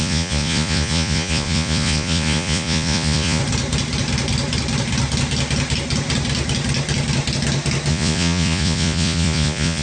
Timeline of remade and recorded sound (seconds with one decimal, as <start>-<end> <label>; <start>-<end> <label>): 0.0-3.4 remade; 3.4-7.9 recorded; 7.9-9.8 remade